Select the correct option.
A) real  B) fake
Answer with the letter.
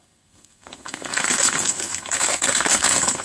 B